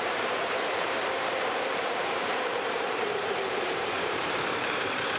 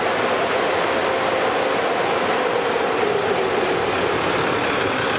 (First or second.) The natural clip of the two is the second